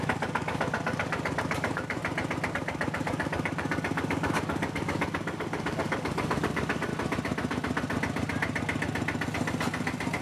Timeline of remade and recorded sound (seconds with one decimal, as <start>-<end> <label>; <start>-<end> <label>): 0.0-2.0 remade; 2.0-2.5 recorded; 2.5-6.9 remade; 6.9-10.2 recorded